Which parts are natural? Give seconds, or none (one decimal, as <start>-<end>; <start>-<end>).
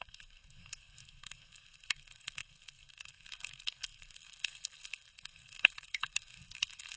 none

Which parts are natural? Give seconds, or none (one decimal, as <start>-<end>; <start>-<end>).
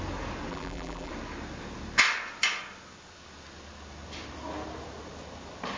0.0-0.5; 1.1-5.8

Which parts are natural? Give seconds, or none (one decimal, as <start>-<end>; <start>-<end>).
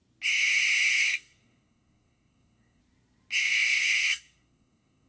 0.0-0.9; 2.8-3.4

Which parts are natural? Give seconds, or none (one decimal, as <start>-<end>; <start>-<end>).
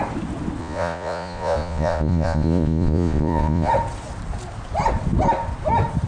0.0-0.6; 3.7-6.1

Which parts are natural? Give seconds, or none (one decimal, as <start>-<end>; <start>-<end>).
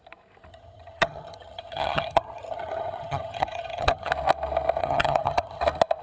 0.0-0.5; 4.1-4.8; 5.6-6.0